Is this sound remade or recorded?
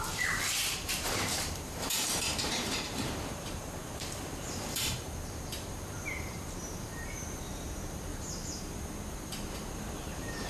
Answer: remade